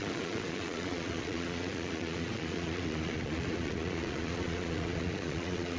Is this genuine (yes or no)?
no